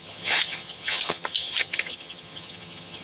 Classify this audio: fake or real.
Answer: fake